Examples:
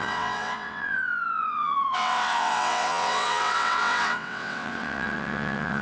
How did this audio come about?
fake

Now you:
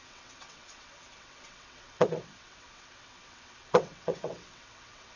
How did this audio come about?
fake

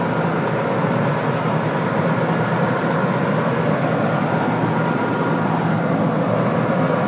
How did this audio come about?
real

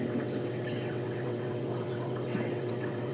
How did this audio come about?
fake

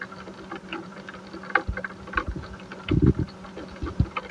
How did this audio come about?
real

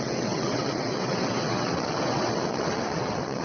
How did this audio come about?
fake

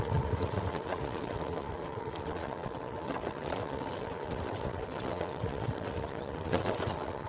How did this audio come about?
fake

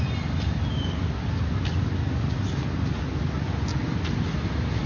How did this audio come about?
real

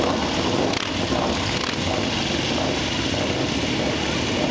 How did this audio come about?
real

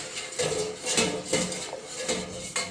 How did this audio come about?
real